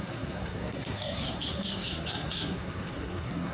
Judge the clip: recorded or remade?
remade